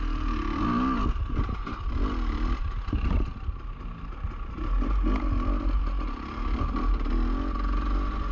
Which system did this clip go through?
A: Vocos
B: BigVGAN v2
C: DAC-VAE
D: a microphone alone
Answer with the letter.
D